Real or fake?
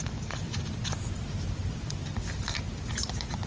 real